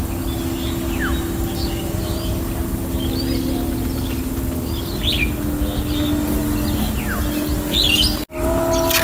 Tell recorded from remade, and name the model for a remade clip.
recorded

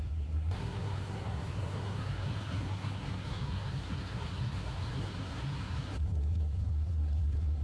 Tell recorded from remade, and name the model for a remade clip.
remade, codec, SNAC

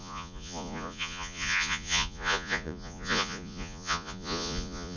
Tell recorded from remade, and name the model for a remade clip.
remade, vocoder, Vocos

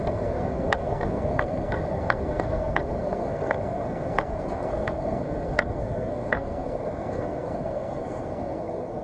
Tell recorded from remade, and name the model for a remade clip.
remade, codec, SNAC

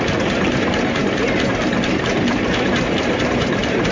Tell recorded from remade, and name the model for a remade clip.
remade, vocoder, BigVGAN v2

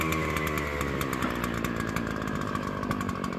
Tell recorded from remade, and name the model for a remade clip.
recorded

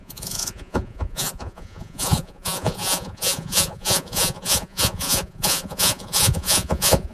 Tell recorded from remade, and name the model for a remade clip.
remade, vocoder, Vocos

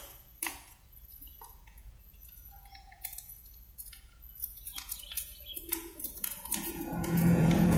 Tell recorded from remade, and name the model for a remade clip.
remade, vocoder, Vocos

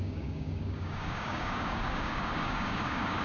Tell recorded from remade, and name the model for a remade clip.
remade, codec, DAC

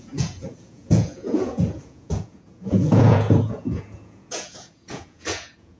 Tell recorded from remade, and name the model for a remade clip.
remade, vocoder, Vocos